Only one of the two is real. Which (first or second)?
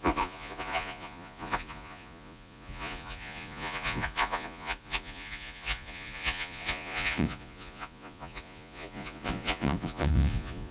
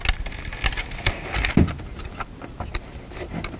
second